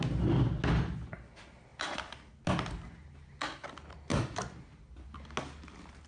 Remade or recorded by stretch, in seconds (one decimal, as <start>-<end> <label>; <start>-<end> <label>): 0.0-1.7 recorded; 1.7-2.3 remade; 2.3-6.1 recorded